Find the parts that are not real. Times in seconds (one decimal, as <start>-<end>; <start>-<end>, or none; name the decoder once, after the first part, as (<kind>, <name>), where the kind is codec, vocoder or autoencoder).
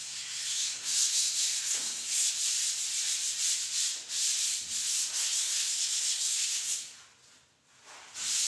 0.0-2.3 (codec, SNAC); 5.1-7.0